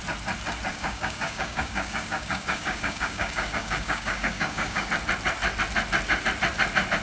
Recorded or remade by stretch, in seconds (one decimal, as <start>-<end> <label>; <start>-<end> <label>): 0.0-0.7 recorded; 0.7-4.9 remade; 4.9-7.0 recorded

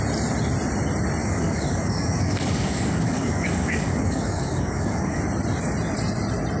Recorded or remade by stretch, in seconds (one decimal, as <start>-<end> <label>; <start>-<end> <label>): 0.0-1.2 recorded; 1.2-5.2 remade; 5.2-6.6 recorded

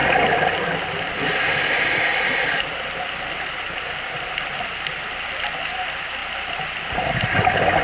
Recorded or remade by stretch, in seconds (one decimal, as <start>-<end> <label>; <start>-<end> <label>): 0.0-7.8 recorded

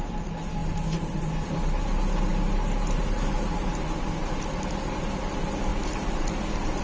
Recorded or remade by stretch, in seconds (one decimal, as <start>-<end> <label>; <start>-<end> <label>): 0.0-6.8 recorded

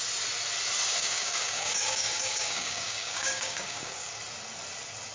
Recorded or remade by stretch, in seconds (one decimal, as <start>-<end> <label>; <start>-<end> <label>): 0.0-1.0 recorded; 1.0-4.1 remade; 4.1-5.1 recorded

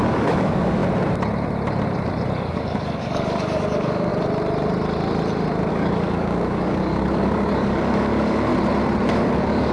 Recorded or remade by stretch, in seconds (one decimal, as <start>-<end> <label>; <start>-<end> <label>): 0.0-0.8 remade; 0.8-2.5 recorded; 2.5-4.1 remade; 4.1-5.7 recorded; 5.7-8.5 remade; 8.5-9.1 recorded; 9.1-9.7 remade